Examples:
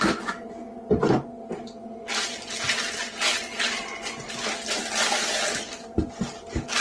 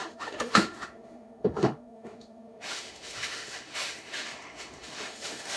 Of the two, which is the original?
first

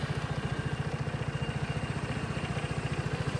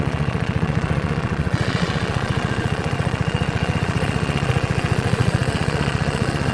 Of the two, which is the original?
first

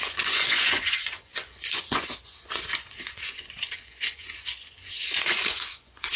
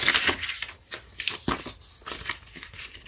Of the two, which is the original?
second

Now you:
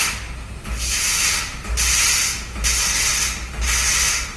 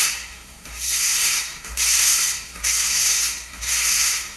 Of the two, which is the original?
first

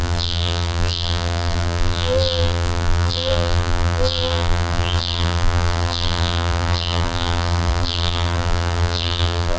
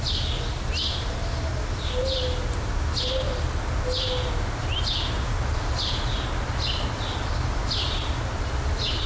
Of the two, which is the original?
second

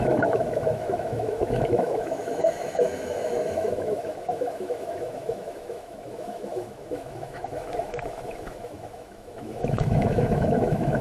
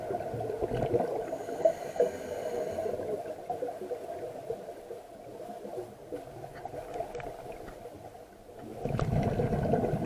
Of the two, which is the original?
second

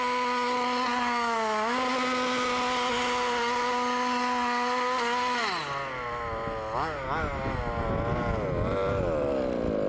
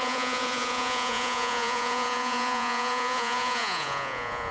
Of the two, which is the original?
first